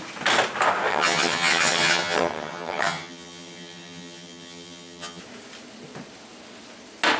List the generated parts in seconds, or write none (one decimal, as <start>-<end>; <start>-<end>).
0.9-5.2